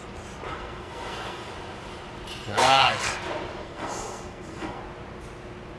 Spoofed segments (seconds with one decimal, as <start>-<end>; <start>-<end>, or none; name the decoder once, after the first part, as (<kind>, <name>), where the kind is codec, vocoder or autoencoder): 0.5-1.5 (codec, SNAC); 2.5-3.1; 3.6-4.8